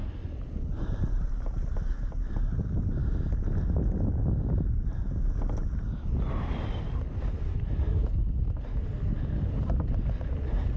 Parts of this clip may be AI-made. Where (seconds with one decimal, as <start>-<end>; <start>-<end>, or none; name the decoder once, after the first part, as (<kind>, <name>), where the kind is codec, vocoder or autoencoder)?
none